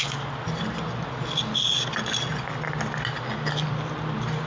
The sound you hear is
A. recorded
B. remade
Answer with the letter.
A